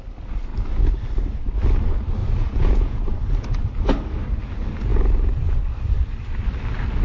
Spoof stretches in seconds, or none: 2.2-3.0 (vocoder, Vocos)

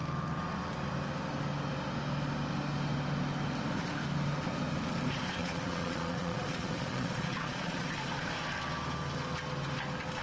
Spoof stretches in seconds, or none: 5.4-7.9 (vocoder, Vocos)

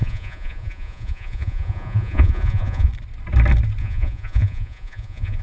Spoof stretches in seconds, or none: 0.0-2.9 (vocoder, Vocos); 3.8-5.4